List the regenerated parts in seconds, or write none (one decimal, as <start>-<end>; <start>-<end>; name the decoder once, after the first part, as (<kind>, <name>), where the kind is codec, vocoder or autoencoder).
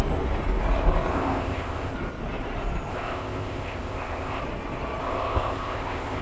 1.1-1.9 (codec, ZipCodec); 2.9-4.4; 5.0-6.2